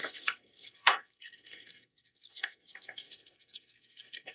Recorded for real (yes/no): no